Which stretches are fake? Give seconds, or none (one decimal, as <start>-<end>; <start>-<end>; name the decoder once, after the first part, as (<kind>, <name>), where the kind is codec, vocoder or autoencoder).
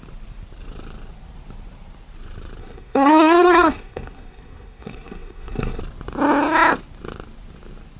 2.6-5.8 (codec, SNAC)